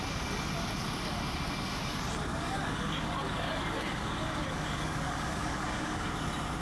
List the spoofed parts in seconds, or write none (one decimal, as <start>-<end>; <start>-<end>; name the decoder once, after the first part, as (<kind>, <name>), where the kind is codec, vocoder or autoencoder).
2.3-6.1 (codec, DAC)